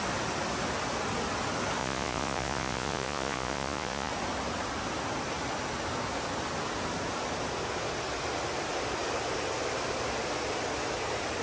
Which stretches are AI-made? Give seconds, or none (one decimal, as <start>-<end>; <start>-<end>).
1.8-4.1